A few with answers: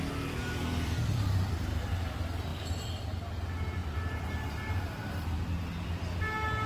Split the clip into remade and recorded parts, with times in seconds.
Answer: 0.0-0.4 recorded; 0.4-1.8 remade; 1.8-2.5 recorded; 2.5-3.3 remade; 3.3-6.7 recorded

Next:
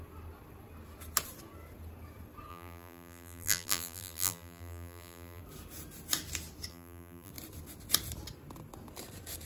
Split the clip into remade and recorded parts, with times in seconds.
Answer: 0.0-2.5 recorded; 2.5-5.4 remade; 5.4-6.7 recorded; 6.7-7.3 remade; 7.3-9.5 recorded

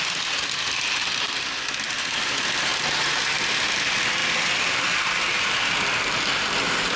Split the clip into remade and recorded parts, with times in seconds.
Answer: 0.0-7.0 recorded

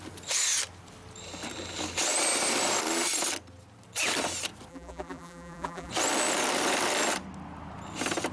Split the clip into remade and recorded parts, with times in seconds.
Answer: 0.0-4.7 recorded; 4.7-5.9 remade; 5.9-8.3 recorded

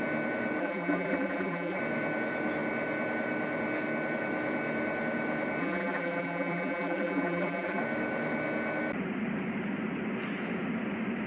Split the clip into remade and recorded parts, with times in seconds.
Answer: 0.0-0.6 recorded; 0.6-1.8 remade; 1.8-5.6 recorded; 5.6-7.8 remade; 7.8-11.3 recorded

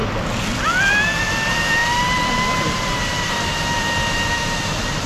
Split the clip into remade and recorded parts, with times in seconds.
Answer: 0.0-5.1 recorded

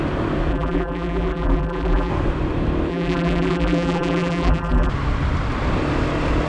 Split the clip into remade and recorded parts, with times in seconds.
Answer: 0.0-0.5 recorded; 0.5-2.1 remade; 2.1-2.9 recorded; 2.9-4.9 remade; 4.9-6.5 recorded